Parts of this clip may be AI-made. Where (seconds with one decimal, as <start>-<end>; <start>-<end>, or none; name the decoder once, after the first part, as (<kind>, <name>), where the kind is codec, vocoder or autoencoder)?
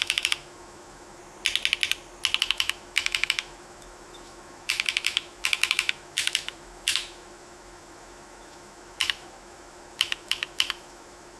0.0-1.2 (autoencoder, DAC-VAE); 2.4-11.4